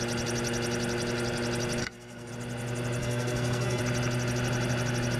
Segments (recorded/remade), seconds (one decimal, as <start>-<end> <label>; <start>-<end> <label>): 0.0-1.8 recorded; 1.8-2.3 remade; 2.3-3.0 recorded; 3.0-3.8 remade; 3.8-5.2 recorded